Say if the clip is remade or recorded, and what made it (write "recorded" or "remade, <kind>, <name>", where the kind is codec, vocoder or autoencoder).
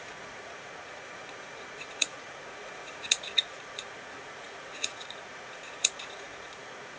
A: remade, vocoder, Vocos